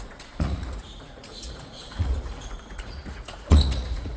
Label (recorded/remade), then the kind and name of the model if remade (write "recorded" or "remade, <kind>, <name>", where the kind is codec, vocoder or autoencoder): remade, vocoder, Vocos